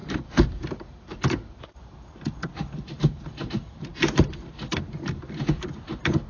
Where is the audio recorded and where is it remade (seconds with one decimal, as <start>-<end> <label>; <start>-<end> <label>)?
0.0-2.3 remade; 2.3-3.9 recorded; 3.9-5.2 remade; 5.2-6.3 recorded